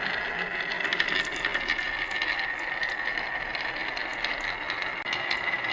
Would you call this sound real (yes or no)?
yes